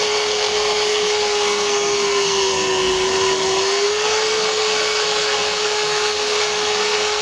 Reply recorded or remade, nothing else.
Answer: remade